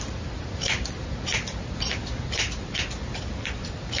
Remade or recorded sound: recorded